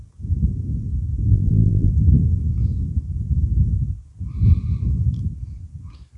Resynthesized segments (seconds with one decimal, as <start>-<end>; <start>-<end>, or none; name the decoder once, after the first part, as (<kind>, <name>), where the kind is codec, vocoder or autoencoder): 1.3-1.9 (vocoder, BigVGAN v2)

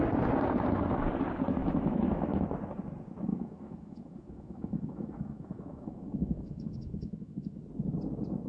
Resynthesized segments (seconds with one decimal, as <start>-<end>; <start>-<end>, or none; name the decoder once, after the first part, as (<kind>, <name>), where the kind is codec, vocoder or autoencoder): 1.6-2.4 (autoencoder, DAC-VAE); 3.3-7.6

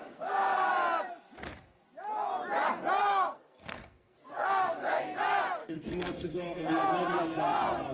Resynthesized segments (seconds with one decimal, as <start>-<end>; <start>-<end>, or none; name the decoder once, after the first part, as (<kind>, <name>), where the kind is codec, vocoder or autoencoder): 0.0-0.7 (codec, SNAC); 3.0-5.0; 5.6-6.9

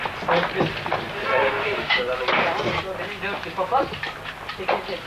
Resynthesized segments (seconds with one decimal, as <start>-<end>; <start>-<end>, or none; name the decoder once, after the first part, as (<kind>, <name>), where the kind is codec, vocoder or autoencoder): 1.4-1.9 (autoencoder, DAC-VAE)

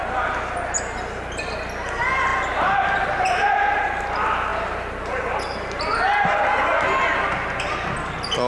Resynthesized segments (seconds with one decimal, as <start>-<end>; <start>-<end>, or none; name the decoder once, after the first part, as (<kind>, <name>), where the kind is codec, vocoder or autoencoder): none